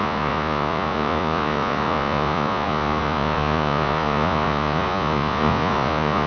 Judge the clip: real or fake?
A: fake